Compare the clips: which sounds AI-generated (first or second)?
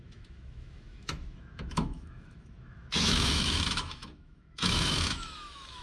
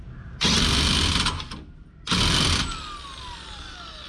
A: first